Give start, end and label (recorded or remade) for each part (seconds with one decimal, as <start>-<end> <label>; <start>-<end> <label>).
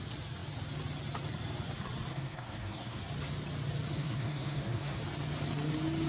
0.0-2.1 recorded; 2.1-3.0 remade; 3.0-3.9 recorded; 3.9-5.0 remade; 5.0-6.1 recorded